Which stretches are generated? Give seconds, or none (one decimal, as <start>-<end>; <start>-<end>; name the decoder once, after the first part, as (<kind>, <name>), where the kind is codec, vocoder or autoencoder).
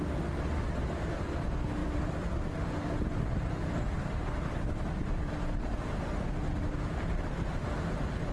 1.8-5.3 (vocoder, BigVGAN v2)